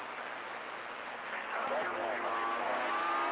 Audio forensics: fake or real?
real